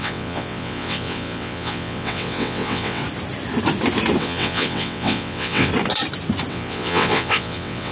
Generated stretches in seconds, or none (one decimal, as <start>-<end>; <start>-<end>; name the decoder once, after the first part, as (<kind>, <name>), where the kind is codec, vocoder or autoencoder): 0.0-3.0 (vocoder, WaveNeXt); 4.2-5.7; 6.5-7.9